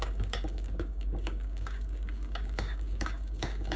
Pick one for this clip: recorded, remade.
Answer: remade